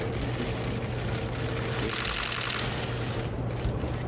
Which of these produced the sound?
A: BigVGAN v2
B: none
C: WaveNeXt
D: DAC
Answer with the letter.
B